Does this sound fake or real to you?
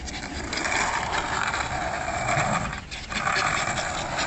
fake